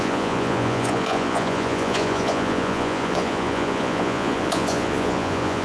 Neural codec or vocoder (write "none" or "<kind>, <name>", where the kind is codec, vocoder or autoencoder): vocoder, Vocos